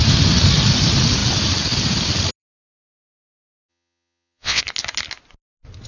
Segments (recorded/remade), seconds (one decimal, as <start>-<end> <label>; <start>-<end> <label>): 0.0-3.7 recorded; 3.7-4.6 remade; 4.6-5.9 recorded